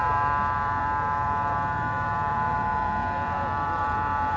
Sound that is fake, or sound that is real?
fake